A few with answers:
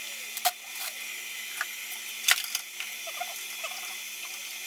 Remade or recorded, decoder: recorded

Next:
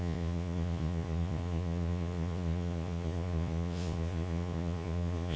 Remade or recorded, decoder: remade, vocoder, Vocos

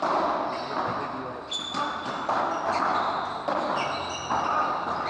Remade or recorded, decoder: recorded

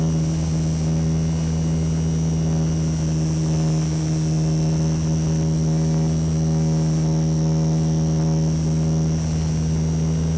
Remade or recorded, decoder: recorded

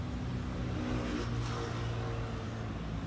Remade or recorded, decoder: recorded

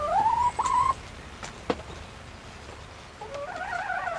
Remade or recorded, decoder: recorded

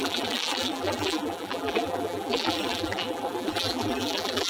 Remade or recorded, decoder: remade, vocoder, BigVGAN v2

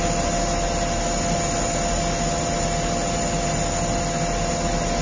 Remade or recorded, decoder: recorded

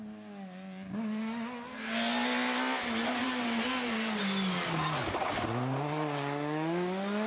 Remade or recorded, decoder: recorded